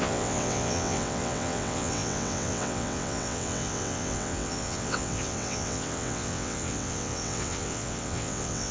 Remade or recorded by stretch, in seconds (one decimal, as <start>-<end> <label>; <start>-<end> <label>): 0.0-8.7 remade